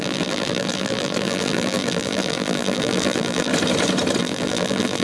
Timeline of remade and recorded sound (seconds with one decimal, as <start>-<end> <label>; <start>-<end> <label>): 0.0-3.5 remade; 3.5-4.2 recorded; 4.2-5.0 remade